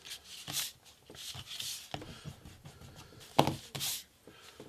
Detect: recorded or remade recorded